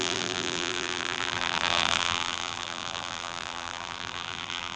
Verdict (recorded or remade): remade